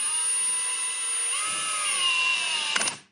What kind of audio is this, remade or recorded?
recorded